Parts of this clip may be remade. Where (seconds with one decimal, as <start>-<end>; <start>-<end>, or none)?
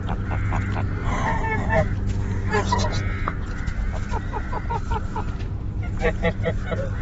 1.0-1.7